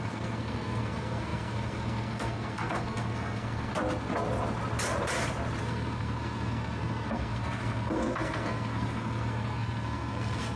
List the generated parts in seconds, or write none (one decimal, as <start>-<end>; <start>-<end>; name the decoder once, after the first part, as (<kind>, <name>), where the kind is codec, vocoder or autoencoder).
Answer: 0.0-3.7 (codec, SNAC); 5.6-10.6